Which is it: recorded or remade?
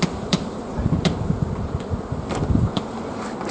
remade